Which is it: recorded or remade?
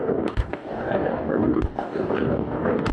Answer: remade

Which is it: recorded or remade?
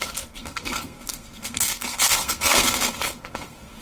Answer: remade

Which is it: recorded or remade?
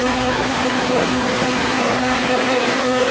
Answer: remade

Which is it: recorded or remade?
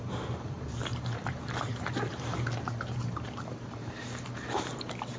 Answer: remade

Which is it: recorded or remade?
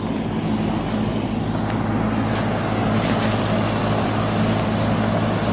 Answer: recorded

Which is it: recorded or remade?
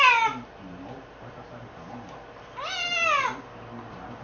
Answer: recorded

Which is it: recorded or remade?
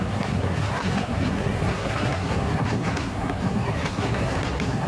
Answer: remade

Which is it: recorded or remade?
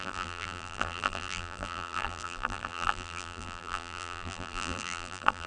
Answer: remade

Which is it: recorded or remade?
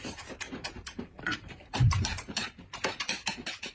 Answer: remade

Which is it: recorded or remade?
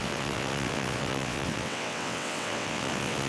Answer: remade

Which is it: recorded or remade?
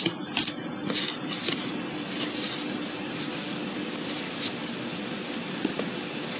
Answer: recorded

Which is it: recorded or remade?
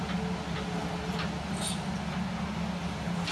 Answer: recorded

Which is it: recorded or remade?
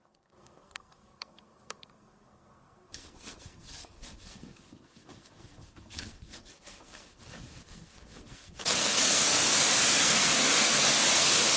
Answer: remade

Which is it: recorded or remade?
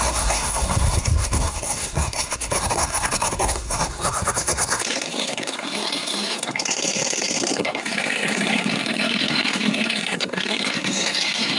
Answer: remade